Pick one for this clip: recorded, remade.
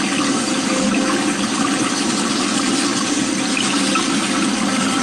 recorded